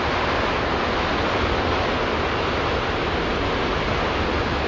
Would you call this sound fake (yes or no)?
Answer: no